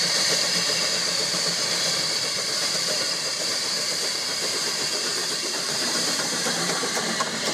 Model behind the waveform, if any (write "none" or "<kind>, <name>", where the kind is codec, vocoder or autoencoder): vocoder, BigVGAN v2